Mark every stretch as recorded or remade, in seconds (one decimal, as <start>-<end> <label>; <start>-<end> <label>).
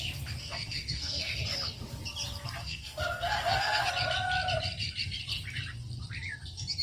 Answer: 0.0-0.4 recorded; 0.4-1.4 remade; 1.4-2.6 recorded; 2.6-3.9 remade; 3.9-6.8 recorded